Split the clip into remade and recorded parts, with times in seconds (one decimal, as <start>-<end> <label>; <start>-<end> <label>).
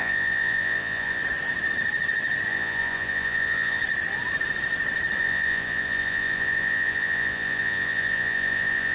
0.0-1.2 remade; 1.2-2.5 recorded; 2.5-3.8 remade; 3.8-5.2 recorded; 5.2-8.9 remade